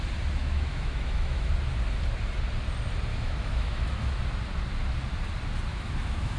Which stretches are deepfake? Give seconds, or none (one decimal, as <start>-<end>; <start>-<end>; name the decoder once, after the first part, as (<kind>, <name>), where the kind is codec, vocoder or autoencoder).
0.4-1.5 (autoencoder, DAC-VAE); 3.1-4.2; 5.7-6.4